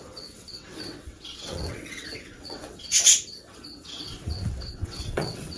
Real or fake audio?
fake